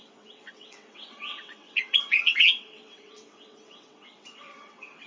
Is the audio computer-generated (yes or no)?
yes